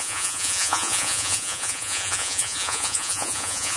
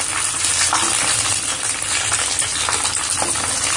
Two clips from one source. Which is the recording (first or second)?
second